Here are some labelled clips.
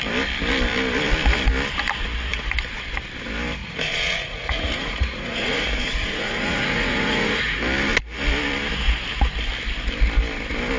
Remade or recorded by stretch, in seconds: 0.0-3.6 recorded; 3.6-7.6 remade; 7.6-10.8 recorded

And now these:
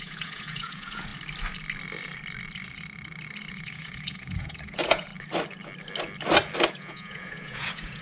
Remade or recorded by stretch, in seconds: 0.0-1.1 remade; 1.1-3.5 recorded; 3.5-5.1 remade; 5.1-6.7 recorded; 6.7-8.0 remade

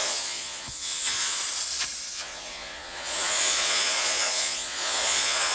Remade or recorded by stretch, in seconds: 0.0-1.4 remade; 1.4-2.1 recorded; 2.1-5.5 remade

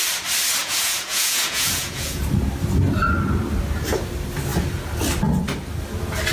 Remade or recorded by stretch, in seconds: 0.0-0.6 recorded; 0.6-2.2 remade; 2.2-6.3 recorded

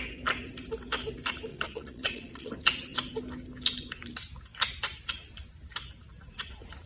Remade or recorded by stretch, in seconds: 0.0-1.5 recorded; 1.5-2.5 remade; 2.5-6.9 recorded